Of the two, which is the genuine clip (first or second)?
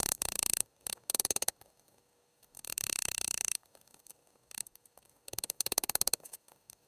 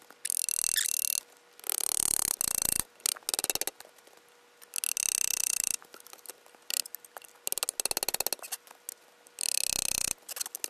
second